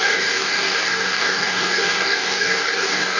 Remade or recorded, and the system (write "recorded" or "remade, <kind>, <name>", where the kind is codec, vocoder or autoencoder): remade, codec, DAC